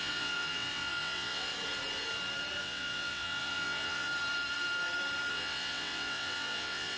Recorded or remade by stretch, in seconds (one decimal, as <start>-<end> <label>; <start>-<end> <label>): 0.0-1.5 remade; 1.5-2.6 recorded; 2.6-4.1 remade; 4.1-5.3 recorded; 5.3-7.0 remade

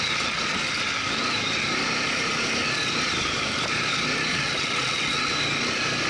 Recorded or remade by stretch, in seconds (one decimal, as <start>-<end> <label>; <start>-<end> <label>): 0.0-4.3 recorded; 4.3-5.3 remade; 5.3-6.1 recorded

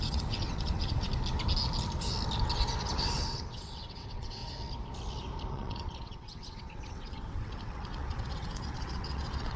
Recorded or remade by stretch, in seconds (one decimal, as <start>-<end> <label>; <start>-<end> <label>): 0.0-1.1 remade; 1.1-2.8 recorded; 2.8-4.4 remade; 4.4-5.5 recorded; 5.5-9.6 remade

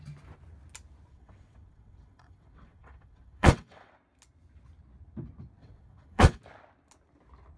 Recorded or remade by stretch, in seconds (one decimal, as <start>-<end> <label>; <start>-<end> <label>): 0.0-1.1 recorded; 1.1-3.9 remade; 3.9-5.6 recorded; 5.6-6.4 remade; 6.4-7.6 recorded

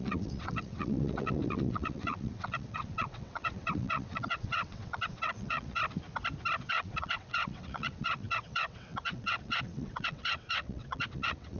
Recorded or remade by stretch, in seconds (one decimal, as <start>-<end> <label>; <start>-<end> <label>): 0.0-5.8 remade; 5.8-6.7 recorded; 6.7-11.6 remade

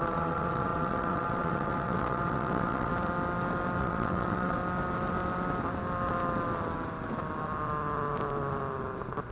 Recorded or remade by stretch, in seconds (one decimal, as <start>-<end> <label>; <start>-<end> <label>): 0.0-2.9 remade; 2.9-3.8 recorded; 3.8-4.6 remade; 4.6-9.3 recorded

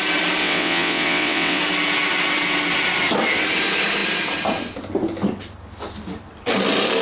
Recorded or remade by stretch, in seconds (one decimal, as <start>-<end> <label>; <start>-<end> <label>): 0.0-0.4 recorded; 0.4-1.6 remade; 1.6-7.0 recorded